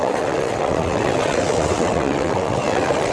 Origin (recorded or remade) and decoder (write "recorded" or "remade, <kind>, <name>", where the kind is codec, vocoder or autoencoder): remade, vocoder, WaveNeXt